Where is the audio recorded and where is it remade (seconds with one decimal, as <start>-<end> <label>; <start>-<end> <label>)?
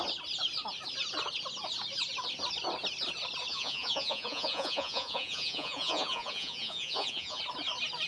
0.0-3.5 recorded; 3.5-7.4 remade; 7.4-8.1 recorded